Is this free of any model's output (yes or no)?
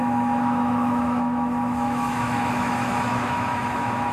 no